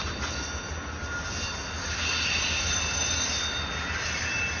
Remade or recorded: recorded